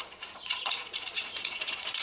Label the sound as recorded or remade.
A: remade